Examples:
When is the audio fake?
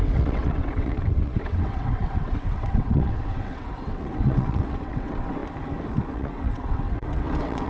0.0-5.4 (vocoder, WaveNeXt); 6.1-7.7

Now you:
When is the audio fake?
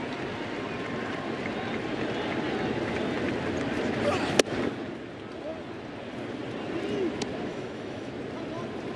7.5-8.1 (autoencoder, DAC-VAE)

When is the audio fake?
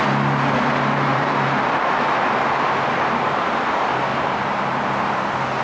1.1-2.2 (vocoder, BigVGAN v2); 4.1-4.8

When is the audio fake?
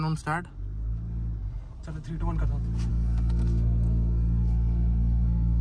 2.9-5.6 (codec, SNAC)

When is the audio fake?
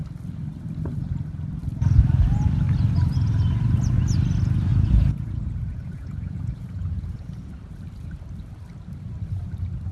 4.7-7.5 (vocoder, Vocos)